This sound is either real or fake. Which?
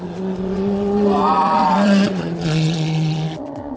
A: fake